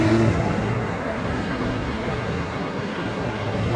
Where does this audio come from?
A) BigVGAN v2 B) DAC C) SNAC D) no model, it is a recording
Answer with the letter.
C